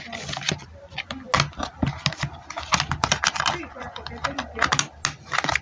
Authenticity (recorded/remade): recorded